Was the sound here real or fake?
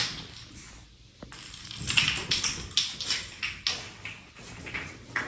real